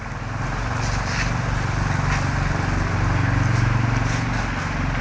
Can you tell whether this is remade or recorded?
recorded